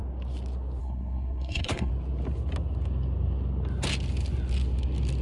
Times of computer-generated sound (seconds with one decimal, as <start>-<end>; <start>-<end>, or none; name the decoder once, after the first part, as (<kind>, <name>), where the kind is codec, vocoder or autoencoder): 0.8-1.9 (codec, SNAC)